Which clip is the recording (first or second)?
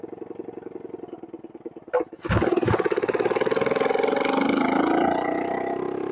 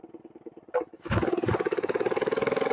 first